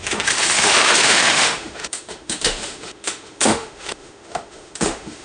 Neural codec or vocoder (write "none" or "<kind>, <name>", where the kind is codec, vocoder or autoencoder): autoencoder, DAC-VAE